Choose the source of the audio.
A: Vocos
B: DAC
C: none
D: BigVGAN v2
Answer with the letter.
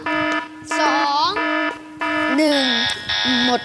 D